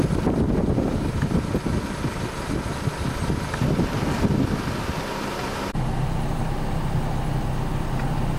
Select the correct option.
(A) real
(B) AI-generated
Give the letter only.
A